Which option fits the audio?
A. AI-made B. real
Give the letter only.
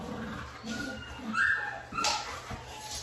B